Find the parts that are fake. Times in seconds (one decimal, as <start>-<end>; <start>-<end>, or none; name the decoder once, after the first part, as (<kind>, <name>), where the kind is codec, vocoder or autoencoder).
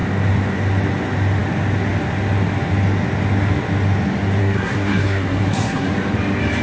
4.4-5.9 (codec, SNAC)